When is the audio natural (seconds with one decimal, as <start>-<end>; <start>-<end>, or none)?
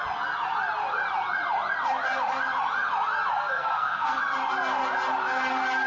0.0-3.3; 4.2-5.9